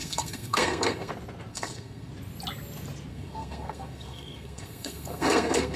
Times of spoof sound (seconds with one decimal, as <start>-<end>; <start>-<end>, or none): 0.0-1.1; 1.5-2.1; 3.1-5.8